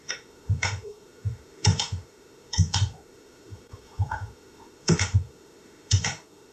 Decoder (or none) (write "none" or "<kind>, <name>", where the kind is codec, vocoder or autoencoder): autoencoder, DAC-VAE